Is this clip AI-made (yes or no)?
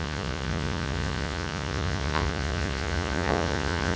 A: yes